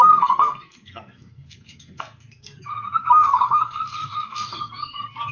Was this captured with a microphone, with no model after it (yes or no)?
no